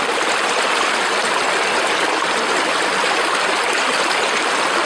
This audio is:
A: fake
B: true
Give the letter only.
B